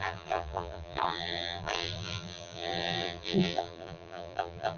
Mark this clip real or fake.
fake